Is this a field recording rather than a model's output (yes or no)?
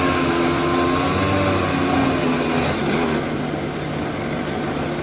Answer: yes